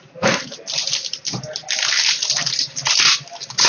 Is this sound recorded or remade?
recorded